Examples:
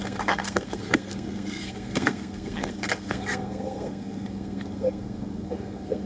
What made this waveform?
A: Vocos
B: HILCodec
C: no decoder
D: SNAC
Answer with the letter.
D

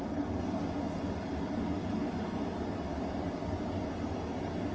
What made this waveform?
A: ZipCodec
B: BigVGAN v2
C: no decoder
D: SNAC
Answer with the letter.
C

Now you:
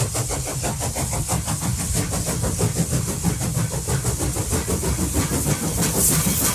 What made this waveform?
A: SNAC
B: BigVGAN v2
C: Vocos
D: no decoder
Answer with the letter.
D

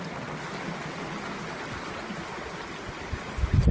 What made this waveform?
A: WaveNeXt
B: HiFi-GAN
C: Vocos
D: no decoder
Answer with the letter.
D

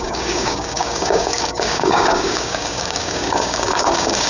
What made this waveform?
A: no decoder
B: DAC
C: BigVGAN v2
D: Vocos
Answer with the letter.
B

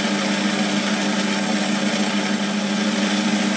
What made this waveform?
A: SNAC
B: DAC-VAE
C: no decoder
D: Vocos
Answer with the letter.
C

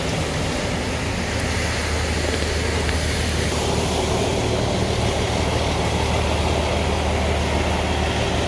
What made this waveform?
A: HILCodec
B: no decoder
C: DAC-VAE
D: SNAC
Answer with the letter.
B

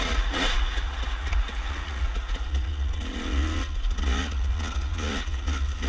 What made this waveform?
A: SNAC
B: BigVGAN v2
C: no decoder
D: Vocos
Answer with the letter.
D